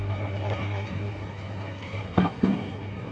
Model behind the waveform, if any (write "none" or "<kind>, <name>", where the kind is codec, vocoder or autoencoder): codec, SNAC